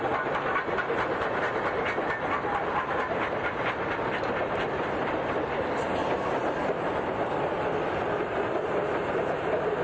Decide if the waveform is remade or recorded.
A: recorded